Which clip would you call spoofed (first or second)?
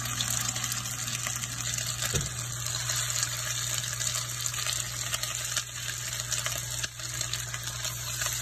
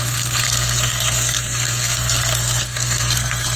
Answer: second